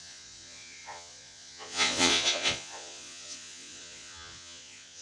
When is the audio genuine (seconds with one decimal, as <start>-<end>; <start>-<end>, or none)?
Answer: none